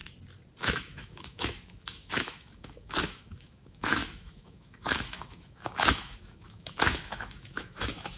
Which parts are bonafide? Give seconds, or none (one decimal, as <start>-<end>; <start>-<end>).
0.0-0.6